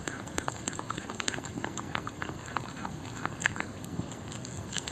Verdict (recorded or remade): remade